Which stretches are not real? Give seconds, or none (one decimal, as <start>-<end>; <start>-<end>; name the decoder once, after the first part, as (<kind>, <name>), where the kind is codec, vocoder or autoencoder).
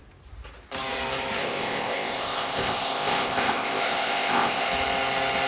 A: 1.4-4.7 (codec, ZipCodec)